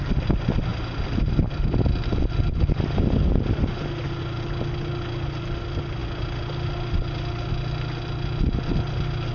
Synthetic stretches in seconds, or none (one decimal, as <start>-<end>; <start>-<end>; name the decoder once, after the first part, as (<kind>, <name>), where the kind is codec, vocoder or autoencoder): none